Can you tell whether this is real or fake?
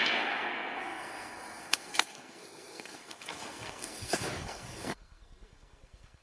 fake